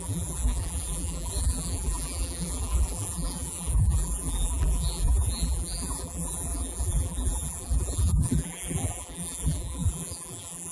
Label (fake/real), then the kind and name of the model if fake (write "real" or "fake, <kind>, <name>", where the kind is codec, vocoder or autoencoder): fake, vocoder, BigVGAN v2